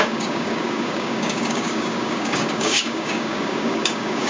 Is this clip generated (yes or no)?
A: yes